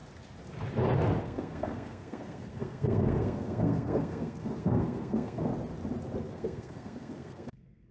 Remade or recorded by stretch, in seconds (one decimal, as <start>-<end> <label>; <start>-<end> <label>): 0.0-1.2 recorded; 1.2-5.5 remade; 5.5-6.3 recorded; 6.3-7.9 remade